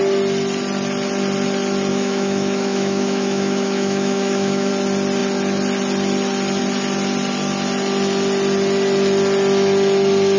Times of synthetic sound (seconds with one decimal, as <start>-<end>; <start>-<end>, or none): 1.9-4.7